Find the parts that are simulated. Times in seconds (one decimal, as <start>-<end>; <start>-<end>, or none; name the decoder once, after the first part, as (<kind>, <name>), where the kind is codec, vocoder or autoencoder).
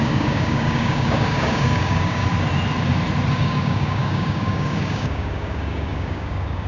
0.0-2.2 (codec, DAC); 3.3-6.7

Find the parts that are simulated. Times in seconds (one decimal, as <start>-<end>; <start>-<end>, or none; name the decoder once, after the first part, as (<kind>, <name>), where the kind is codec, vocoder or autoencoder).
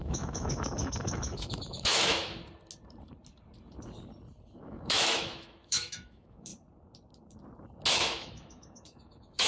0.0-2.4 (autoencoder, DAC-VAE); 4.6-6.5; 7.9-9.5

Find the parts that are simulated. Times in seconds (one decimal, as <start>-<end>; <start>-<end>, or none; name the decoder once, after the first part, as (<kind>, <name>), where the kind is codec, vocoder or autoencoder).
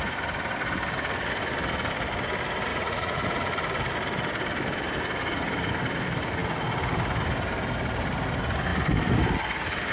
2.7-3.5 (vocoder, Vocos)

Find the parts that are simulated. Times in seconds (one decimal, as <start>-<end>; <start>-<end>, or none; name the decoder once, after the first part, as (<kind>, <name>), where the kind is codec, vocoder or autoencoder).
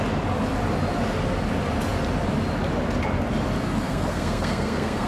3.9-5.1 (codec, SNAC)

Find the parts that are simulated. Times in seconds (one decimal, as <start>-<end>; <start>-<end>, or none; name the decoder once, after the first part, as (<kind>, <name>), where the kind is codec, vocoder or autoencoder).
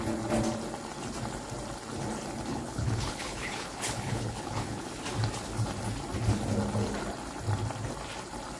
2.5-4.9 (codec, HILCodec)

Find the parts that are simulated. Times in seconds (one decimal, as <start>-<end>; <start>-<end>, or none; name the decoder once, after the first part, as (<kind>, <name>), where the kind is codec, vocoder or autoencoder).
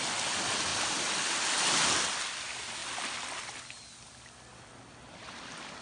none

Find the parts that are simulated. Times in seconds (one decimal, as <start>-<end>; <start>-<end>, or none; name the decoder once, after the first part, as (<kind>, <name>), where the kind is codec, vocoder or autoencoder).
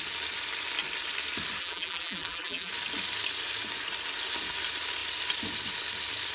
1.6-2.7 (vocoder, BigVGAN v2)